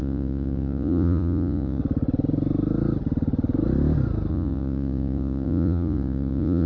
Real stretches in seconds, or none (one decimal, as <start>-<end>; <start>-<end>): 1.8-4.3